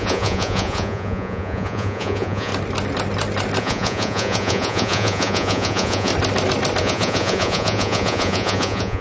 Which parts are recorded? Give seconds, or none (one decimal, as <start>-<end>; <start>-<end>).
2.5-3.6; 6.1-6.8